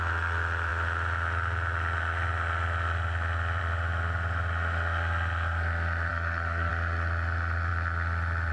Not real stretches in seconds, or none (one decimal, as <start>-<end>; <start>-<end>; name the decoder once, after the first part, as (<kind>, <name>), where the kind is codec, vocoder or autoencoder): 6.1-6.7 (codec, DAC)